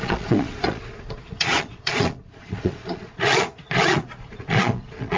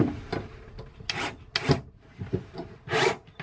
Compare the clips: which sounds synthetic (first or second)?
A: first